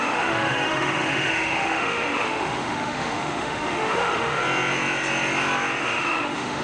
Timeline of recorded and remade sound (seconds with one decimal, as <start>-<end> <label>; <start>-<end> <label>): 0.0-4.4 remade; 4.4-5.8 recorded; 5.8-6.6 remade